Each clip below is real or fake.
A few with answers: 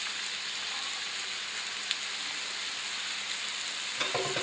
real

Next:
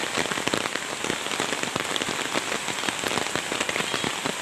real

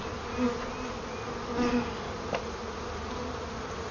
real